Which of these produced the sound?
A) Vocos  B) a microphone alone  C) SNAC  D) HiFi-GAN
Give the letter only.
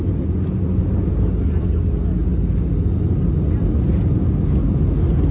B